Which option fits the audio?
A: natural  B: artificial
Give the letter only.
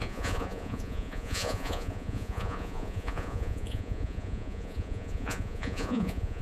B